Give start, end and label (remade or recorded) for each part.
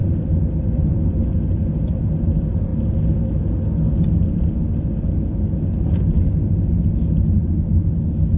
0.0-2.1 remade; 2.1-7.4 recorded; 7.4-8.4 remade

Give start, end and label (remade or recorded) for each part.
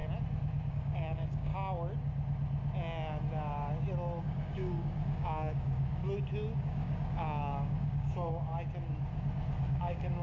0.0-0.7 recorded; 0.7-1.5 remade; 1.5-4.2 recorded; 4.2-6.0 remade; 6.0-6.6 recorded; 6.6-8.5 remade; 8.5-9.6 recorded; 9.6-10.2 remade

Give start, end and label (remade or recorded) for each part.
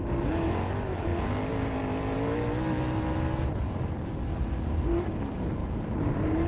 0.0-5.6 recorded; 5.6-6.5 remade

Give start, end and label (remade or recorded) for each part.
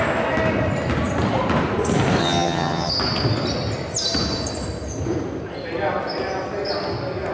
0.0-2.2 recorded; 2.2-2.9 remade; 2.9-7.3 recorded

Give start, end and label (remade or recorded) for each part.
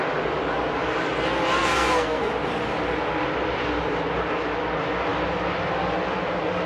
0.0-1.6 recorded; 1.6-2.3 remade; 2.3-6.7 recorded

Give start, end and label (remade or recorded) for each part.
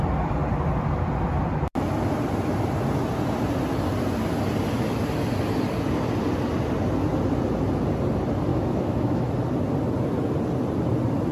0.0-8.5 recorded; 8.5-9.3 remade; 9.3-11.3 recorded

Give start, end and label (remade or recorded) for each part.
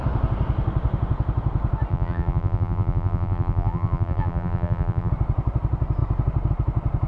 0.0-1.9 recorded; 1.9-5.1 remade; 5.1-7.1 recorded